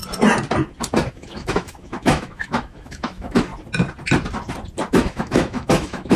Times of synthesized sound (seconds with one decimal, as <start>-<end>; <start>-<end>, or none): 1.1-3.5; 4.9-6.2